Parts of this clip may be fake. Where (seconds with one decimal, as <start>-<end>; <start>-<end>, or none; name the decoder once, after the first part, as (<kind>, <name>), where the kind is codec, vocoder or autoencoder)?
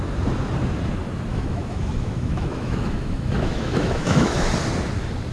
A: 1.3-4.5 (autoencoder, DAC-VAE)